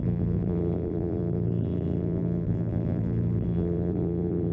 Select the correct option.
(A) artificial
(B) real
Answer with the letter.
A